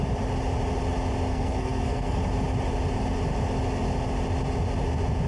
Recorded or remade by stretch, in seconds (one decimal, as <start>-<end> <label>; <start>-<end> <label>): 0.0-1.3 recorded; 1.3-2.2 remade; 2.2-5.3 recorded